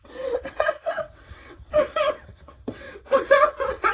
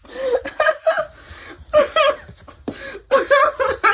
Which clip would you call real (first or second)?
second